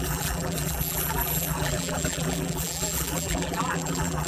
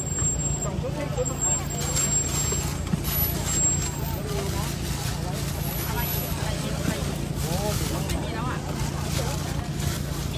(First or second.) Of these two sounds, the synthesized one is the first